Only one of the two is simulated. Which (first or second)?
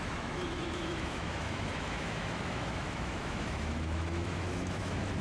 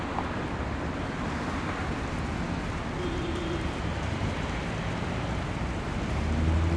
first